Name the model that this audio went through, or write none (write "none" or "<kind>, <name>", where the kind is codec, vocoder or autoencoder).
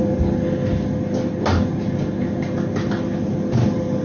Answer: none